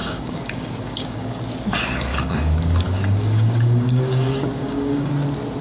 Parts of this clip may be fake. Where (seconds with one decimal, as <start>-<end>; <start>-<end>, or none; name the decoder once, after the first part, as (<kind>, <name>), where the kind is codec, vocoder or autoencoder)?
0.0-1.4 (codec, DAC); 2.1-5.1